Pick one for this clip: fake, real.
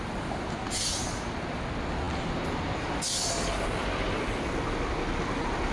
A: real